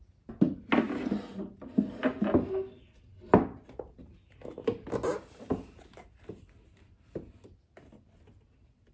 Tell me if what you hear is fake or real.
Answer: real